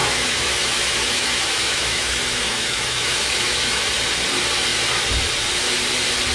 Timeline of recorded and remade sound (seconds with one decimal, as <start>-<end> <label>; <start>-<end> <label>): 0.0-3.8 remade; 3.8-6.3 recorded